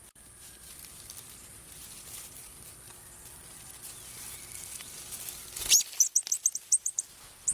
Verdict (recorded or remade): recorded